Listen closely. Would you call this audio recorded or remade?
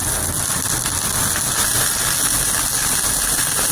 recorded